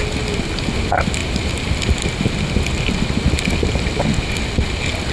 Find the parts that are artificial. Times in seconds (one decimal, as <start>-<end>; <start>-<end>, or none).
none